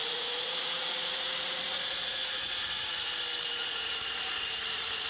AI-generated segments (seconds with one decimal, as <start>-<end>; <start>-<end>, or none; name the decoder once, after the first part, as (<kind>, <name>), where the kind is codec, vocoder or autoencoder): 0.0-3.1 (vocoder, Vocos); 3.5-5.1